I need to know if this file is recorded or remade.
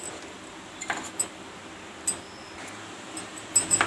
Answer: recorded